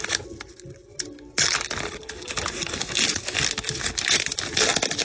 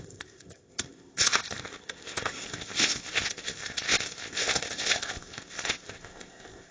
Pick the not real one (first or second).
second